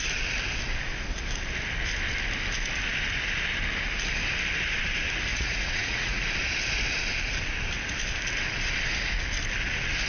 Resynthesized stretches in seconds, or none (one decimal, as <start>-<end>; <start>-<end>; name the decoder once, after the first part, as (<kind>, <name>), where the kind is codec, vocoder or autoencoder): 5.3-6.2 (vocoder, Vocos)